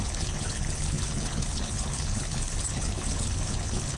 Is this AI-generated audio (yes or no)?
yes